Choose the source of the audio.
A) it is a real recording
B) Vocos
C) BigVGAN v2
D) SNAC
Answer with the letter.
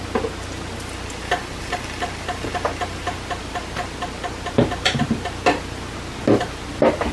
A